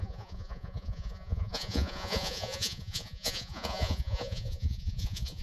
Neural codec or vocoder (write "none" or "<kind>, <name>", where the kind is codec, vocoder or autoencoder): vocoder, Vocos